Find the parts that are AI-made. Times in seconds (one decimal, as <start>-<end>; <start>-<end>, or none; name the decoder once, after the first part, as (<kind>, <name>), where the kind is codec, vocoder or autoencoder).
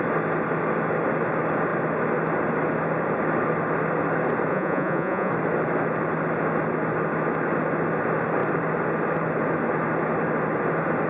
4.5-5.3 (vocoder, Vocos)